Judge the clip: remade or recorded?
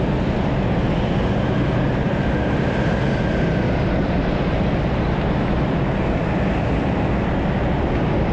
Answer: recorded